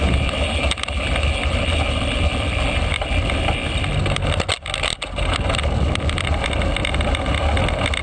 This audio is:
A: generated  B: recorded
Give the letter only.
B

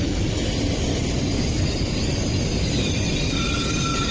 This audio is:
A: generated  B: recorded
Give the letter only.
B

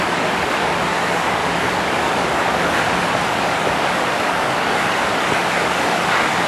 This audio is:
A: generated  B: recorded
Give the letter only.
A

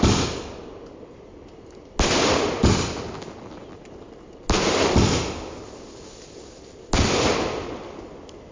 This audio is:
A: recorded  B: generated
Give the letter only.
A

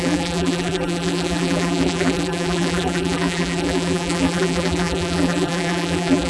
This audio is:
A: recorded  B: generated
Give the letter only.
B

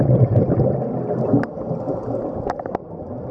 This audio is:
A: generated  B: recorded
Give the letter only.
B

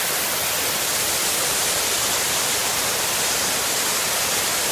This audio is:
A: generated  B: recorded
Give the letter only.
B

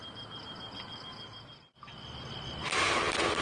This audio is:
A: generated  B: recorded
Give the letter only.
B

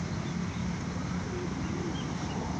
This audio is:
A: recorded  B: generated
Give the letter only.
A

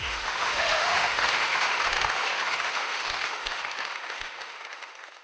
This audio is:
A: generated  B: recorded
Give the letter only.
A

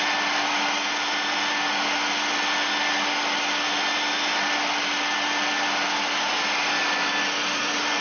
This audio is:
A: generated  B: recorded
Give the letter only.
B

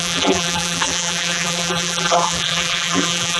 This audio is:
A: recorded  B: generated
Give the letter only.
B